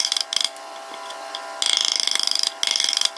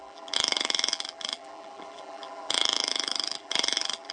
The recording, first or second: first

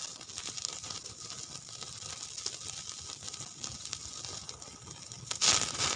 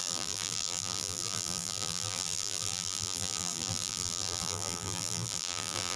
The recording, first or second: first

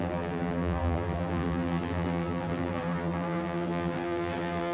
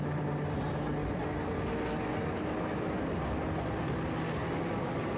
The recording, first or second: second